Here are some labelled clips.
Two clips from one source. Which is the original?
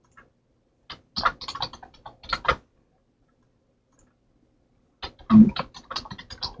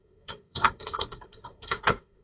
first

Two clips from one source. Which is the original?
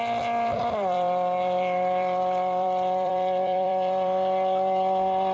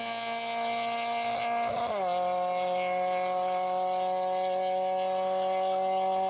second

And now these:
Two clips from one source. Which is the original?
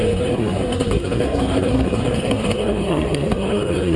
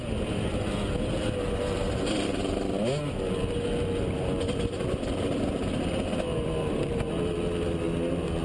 second